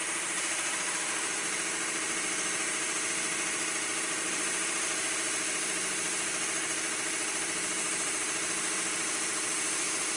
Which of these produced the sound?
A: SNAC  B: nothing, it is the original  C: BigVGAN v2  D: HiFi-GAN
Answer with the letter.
C